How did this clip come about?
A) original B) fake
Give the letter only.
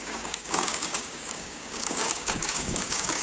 B